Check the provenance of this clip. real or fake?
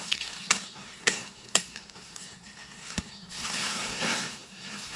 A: fake